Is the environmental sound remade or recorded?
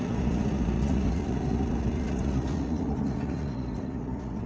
remade